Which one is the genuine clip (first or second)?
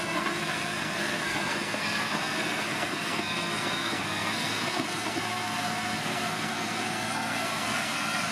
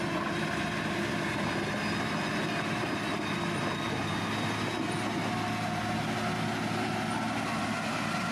second